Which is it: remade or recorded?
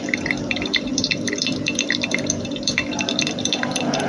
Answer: remade